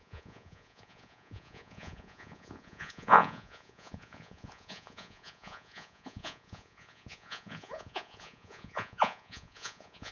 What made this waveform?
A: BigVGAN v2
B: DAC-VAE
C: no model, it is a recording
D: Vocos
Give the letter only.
D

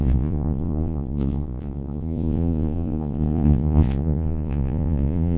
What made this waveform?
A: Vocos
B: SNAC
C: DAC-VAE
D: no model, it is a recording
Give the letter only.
A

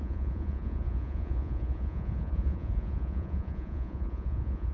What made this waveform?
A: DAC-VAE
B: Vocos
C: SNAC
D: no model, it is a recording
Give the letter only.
B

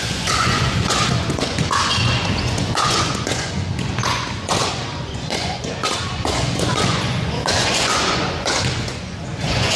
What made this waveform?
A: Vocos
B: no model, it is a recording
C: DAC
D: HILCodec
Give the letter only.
A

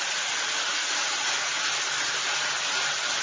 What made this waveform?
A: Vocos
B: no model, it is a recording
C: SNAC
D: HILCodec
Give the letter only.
B